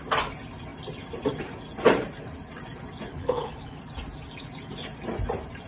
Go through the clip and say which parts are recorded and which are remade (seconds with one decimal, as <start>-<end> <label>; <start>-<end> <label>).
0.0-3.1 recorded; 3.1-3.8 remade; 3.8-5.7 recorded